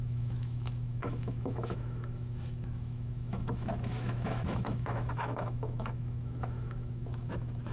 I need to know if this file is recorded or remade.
remade